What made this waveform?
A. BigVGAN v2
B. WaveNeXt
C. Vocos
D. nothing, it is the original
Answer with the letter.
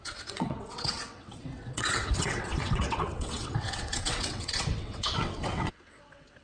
B